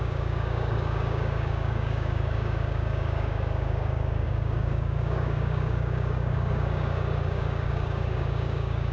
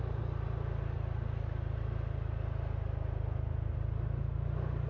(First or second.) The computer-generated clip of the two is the first